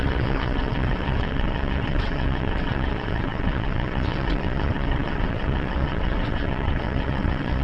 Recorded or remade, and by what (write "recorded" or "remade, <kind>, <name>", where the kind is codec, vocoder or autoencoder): remade, vocoder, WaveNeXt